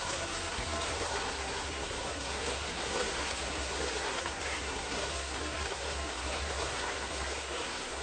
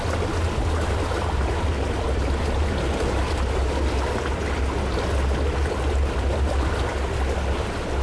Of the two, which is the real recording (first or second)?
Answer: second